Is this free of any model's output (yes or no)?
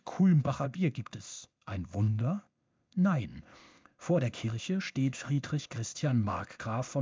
no